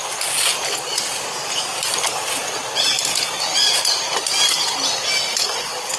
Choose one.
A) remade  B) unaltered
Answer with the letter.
B